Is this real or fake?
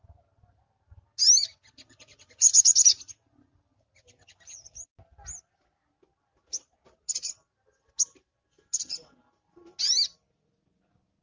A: real